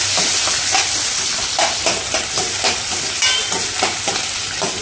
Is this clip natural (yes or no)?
yes